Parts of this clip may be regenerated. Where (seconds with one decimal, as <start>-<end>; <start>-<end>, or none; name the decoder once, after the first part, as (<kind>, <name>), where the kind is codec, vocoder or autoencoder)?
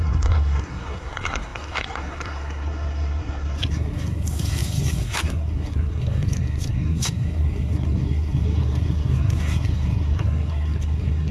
0.0-11.3 (codec, SNAC)